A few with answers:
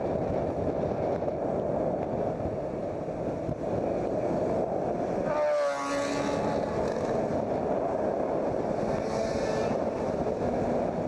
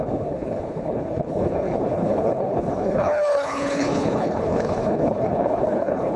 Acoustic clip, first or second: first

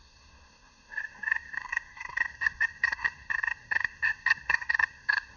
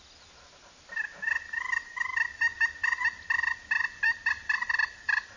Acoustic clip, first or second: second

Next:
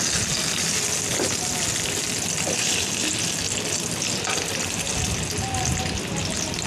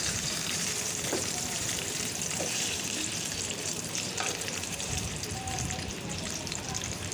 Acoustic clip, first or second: first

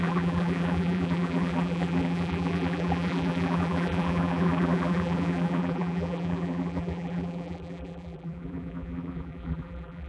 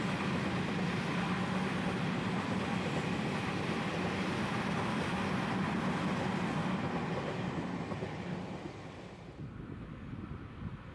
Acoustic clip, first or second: second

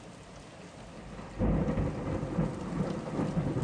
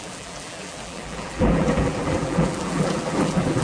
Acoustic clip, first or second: first